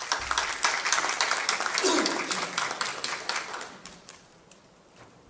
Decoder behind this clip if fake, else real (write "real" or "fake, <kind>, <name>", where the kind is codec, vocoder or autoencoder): real